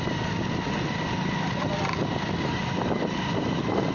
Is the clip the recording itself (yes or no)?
yes